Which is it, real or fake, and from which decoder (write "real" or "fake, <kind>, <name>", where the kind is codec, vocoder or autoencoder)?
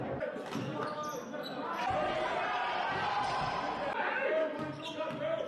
real